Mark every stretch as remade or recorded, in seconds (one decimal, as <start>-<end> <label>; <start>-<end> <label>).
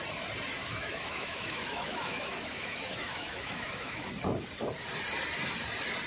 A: 0.0-0.6 recorded; 0.6-4.1 remade; 4.1-6.1 recorded